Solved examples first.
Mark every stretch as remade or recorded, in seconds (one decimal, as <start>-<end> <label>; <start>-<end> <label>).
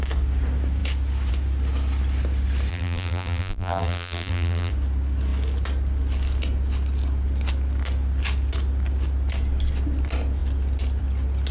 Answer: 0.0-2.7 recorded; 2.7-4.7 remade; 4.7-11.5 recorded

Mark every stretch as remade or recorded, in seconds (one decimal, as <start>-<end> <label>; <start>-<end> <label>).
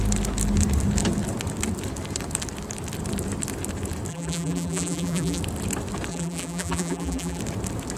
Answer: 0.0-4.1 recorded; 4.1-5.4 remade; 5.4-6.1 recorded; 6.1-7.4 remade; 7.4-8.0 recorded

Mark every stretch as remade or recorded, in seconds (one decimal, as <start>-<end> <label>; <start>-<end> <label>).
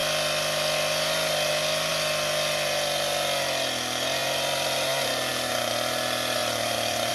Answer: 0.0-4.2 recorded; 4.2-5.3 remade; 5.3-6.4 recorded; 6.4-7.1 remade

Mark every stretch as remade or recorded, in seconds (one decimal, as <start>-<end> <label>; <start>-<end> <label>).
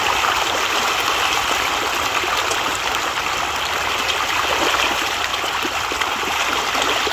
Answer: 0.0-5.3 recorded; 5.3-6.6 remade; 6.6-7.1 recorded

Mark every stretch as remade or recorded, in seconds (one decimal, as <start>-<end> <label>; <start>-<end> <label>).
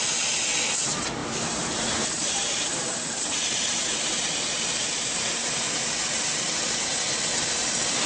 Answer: 0.0-1.2 recorded; 1.2-5.8 remade; 5.8-8.1 recorded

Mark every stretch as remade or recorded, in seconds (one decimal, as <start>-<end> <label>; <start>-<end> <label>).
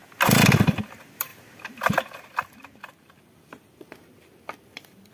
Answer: 0.0-0.8 recorded; 0.8-5.1 remade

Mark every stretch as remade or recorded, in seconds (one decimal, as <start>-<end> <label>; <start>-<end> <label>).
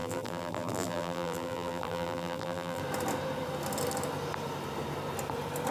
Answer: 0.0-2.8 remade; 2.8-5.7 recorded